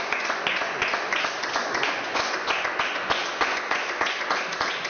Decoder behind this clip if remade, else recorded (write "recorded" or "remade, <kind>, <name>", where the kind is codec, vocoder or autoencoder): remade, vocoder, Vocos